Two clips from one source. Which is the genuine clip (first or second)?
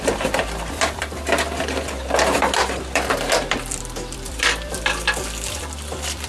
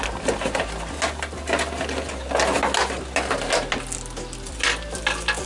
second